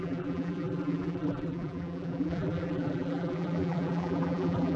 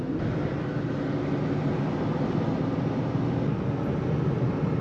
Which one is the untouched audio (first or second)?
second